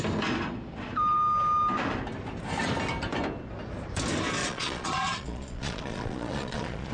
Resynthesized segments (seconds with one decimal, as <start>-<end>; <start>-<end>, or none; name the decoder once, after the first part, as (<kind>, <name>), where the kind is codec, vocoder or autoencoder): 4.4-6.9 (vocoder, Vocos)